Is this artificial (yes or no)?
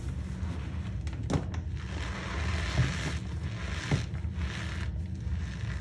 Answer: no